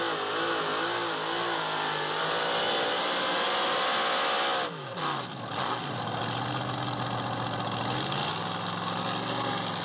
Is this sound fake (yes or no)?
no